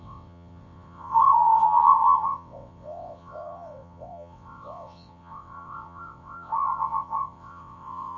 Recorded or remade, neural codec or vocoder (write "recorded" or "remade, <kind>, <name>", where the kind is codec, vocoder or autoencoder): remade, vocoder, WaveNeXt